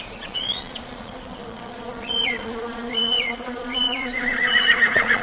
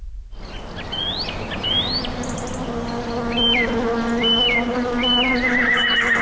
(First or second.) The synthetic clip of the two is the first